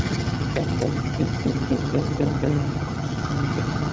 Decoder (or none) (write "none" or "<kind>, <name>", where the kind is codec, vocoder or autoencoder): vocoder, HiFi-GAN